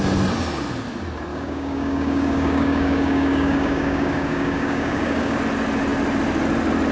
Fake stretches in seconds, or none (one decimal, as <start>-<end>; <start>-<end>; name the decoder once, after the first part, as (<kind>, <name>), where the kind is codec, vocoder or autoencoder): 1.3-5.4 (codec, DAC)